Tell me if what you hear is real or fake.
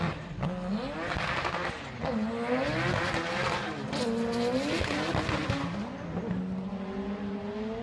real